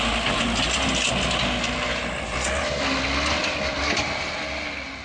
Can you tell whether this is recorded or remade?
recorded